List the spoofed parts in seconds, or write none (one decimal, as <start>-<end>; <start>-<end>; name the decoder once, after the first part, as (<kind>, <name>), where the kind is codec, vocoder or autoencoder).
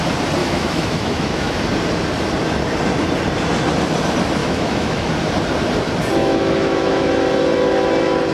0.4-1.6 (autoencoder, DAC-VAE); 4.4-5.1; 6.2-7.1